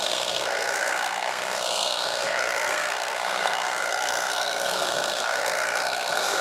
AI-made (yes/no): yes